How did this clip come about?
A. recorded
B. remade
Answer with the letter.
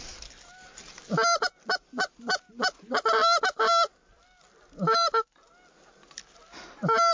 A